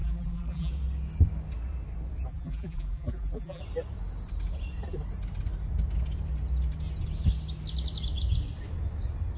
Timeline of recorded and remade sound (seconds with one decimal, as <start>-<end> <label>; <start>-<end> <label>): 0.0-0.7 remade; 0.7-2.3 recorded; 2.3-3.6 remade; 3.6-9.4 recorded